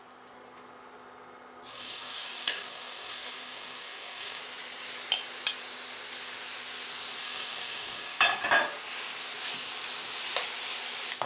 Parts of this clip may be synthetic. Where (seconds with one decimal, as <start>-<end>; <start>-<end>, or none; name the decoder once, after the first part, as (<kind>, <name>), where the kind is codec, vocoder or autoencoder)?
1.7-4.4 (codec, DAC); 7.2-8.2